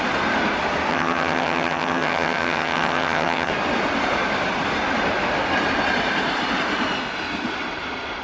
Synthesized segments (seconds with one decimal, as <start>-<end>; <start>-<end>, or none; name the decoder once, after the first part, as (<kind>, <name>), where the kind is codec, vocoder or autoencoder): 0.9-3.5 (vocoder, HiFi-GAN)